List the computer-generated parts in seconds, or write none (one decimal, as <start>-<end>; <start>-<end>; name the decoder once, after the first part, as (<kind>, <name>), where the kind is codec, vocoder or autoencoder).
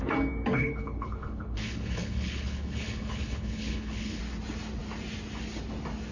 0.5-4.2 (codec, HILCodec)